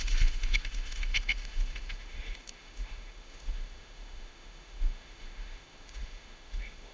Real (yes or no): no